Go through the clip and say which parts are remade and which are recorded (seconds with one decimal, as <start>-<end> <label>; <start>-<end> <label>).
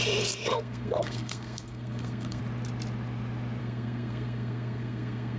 0.0-0.5 recorded; 0.5-2.4 remade; 2.4-3.6 recorded; 3.6-5.4 remade